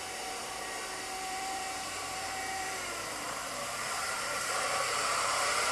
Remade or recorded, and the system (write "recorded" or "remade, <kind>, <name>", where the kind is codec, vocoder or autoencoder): remade, vocoder, BigVGAN v2